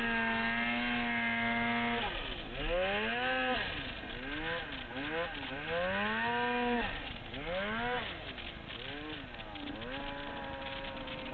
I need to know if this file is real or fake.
real